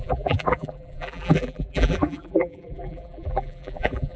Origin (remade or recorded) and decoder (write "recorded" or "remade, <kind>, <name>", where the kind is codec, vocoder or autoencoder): remade, vocoder, BigVGAN v2